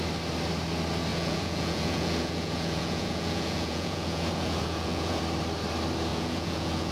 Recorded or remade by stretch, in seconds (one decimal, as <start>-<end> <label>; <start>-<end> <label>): 0.0-1.1 recorded; 1.1-5.2 remade; 5.2-6.1 recorded; 6.1-6.9 remade